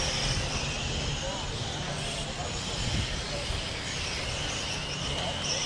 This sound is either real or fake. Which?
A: real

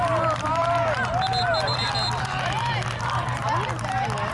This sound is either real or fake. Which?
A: real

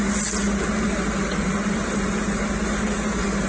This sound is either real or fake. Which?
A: real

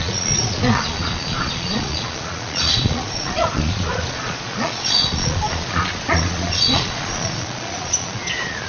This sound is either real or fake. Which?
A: fake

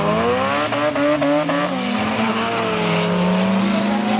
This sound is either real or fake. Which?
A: real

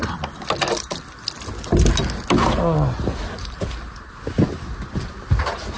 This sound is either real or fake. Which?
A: real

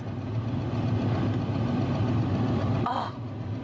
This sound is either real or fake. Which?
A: real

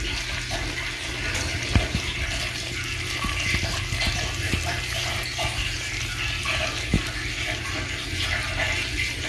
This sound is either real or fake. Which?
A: real